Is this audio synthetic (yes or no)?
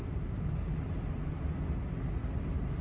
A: no